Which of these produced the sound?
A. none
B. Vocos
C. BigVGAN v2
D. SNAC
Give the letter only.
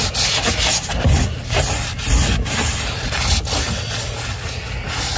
A